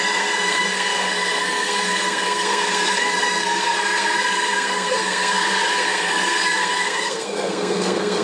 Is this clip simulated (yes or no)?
yes